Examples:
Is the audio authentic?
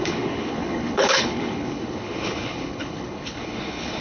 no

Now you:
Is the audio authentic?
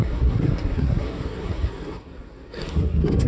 no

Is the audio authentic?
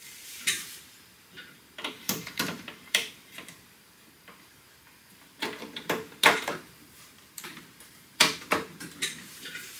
no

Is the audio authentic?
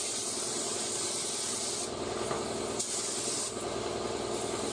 yes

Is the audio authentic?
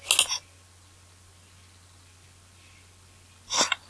yes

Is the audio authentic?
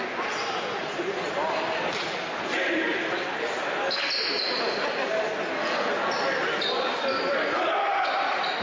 yes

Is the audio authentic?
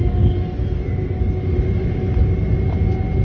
yes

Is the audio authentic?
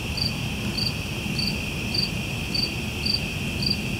yes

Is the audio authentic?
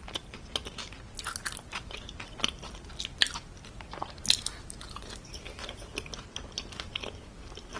yes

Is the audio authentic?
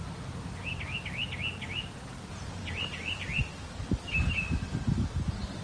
yes